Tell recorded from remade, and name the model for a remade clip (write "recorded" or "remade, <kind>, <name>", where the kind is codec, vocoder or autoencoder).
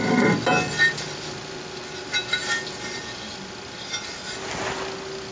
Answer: recorded